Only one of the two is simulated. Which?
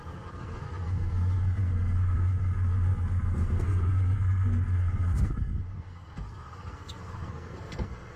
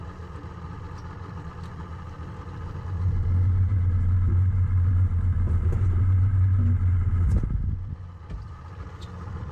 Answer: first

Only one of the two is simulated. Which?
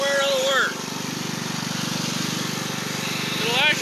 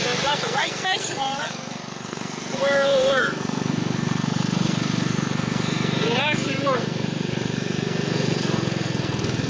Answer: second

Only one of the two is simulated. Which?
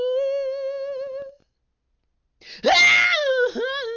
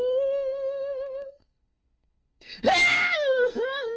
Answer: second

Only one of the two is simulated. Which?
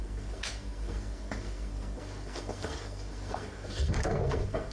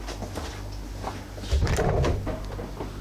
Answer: first